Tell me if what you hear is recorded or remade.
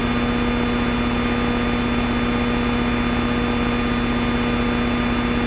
recorded